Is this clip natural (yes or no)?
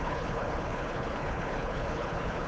no